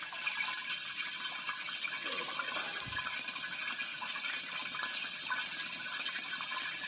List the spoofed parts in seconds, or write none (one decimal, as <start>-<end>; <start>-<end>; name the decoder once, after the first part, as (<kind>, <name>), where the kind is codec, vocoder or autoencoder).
3.9-4.4 (vocoder, Vocos)